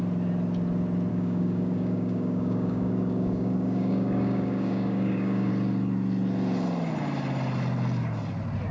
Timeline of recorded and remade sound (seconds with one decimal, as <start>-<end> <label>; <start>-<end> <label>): 0.0-1.1 recorded; 1.1-5.5 remade; 5.5-8.7 recorded